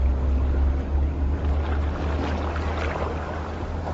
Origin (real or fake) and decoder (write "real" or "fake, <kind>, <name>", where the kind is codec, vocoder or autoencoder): real